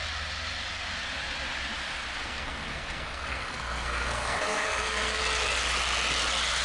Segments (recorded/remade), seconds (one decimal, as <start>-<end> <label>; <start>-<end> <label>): 0.0-2.2 recorded; 2.2-5.2 remade; 5.2-6.6 recorded